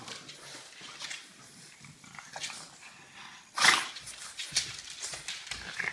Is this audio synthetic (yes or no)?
no